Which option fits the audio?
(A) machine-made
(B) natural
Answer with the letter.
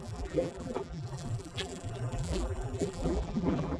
A